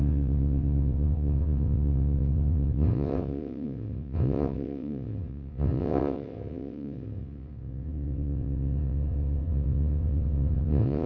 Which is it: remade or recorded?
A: remade